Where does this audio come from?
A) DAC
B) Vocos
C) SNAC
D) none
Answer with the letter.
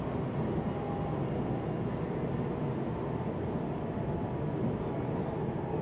D